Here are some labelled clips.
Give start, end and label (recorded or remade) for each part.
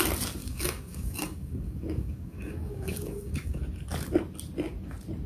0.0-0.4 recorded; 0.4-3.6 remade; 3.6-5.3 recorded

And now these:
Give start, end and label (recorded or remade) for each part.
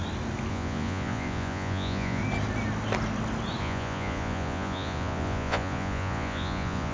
0.0-0.5 recorded; 0.5-2.2 remade; 2.2-3.6 recorded; 3.6-6.9 remade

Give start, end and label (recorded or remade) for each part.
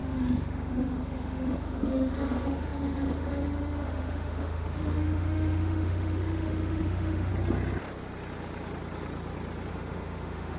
0.0-7.3 remade; 7.3-9.7 recorded; 9.7-10.6 remade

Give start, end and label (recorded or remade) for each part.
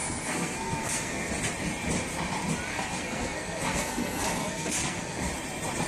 0.0-1.3 remade; 1.3-2.7 recorded; 2.7-5.3 remade; 5.3-5.9 recorded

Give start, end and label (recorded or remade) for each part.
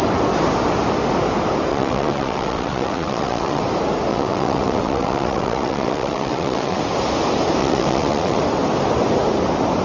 0.0-1.7 recorded; 1.7-3.6 remade; 3.6-4.1 recorded; 4.1-6.8 remade; 6.8-7.6 recorded; 7.6-8.4 remade; 8.4-9.8 recorded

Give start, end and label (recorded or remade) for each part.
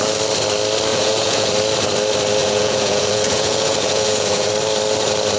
0.0-0.9 recorded; 0.9-1.5 remade; 1.5-2.4 recorded; 2.4-4.5 remade; 4.5-5.4 recorded